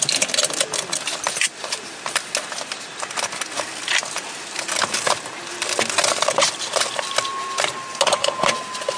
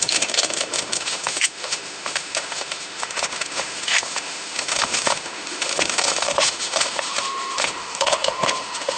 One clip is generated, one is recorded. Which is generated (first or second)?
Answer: second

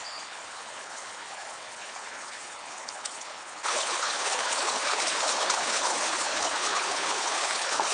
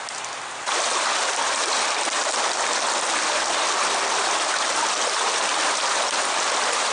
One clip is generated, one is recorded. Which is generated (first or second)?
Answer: first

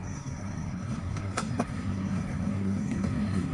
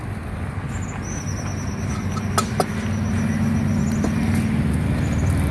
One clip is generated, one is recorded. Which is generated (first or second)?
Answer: first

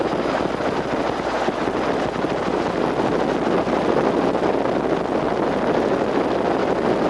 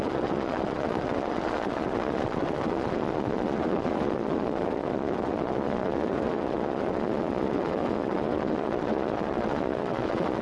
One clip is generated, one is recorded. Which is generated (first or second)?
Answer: second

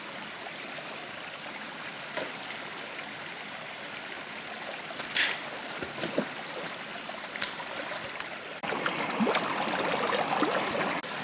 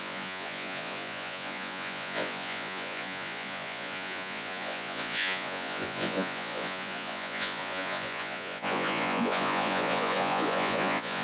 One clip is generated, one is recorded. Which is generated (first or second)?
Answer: second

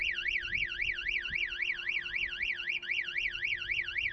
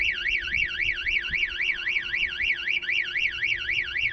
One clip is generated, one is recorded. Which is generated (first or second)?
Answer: second